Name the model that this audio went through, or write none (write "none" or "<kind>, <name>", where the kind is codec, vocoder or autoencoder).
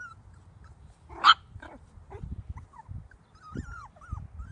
none